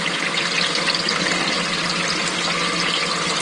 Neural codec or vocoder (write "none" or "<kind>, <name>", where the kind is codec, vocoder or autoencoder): none